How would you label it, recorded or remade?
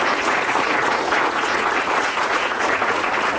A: remade